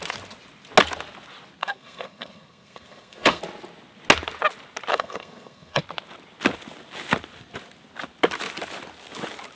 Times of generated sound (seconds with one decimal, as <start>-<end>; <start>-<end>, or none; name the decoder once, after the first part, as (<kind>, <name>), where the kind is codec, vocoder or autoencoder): 1.6-3.4 (codec, SNAC); 4.9-5.8